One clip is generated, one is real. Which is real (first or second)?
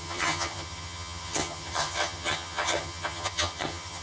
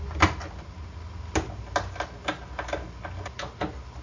second